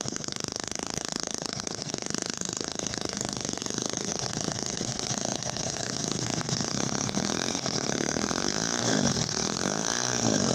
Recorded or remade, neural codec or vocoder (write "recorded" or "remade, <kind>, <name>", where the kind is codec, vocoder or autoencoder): remade, codec, SNAC